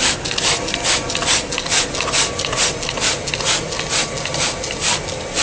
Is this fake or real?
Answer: real